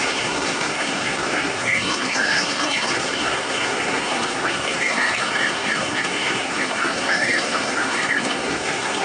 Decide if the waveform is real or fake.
fake